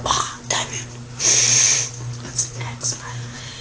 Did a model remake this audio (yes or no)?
no